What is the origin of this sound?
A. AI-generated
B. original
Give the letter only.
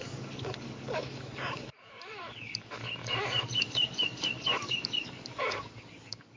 A